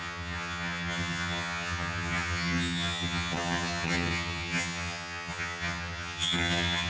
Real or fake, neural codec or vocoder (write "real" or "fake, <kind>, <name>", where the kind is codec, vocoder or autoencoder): fake, vocoder, HiFi-GAN